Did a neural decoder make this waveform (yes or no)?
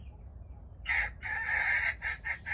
no